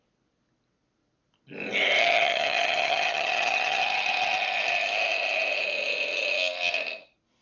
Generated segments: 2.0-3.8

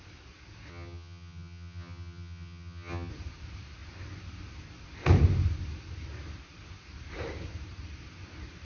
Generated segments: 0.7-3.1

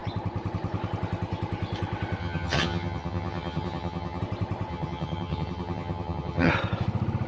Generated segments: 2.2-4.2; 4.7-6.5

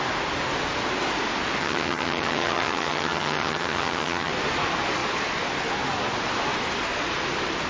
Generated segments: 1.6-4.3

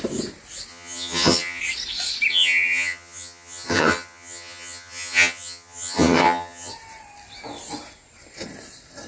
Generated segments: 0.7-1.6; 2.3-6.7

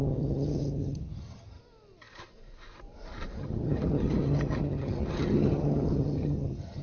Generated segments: 0.0-1.6; 3.4-6.8